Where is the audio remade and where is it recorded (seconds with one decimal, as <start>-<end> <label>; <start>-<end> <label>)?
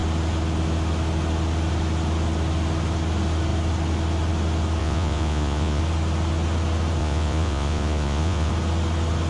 0.0-4.8 recorded; 4.8-5.8 remade; 5.8-7.0 recorded; 7.0-8.5 remade; 8.5-9.3 recorded